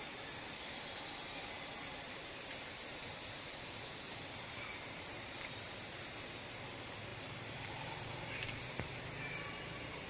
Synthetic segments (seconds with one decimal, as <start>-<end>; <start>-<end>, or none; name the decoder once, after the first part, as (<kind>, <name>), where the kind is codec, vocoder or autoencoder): 1.9-6.2 (vocoder, BigVGAN v2); 7.1-9.0